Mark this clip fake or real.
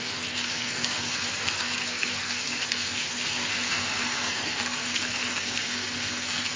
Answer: fake